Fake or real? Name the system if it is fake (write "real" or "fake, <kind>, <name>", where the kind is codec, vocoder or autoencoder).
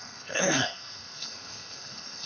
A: fake, codec, SNAC